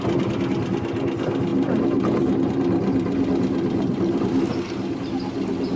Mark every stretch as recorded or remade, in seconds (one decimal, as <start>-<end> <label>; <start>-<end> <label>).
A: 0.0-5.8 recorded